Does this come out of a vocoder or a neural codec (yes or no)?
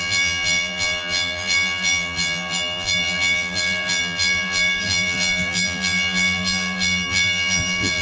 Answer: yes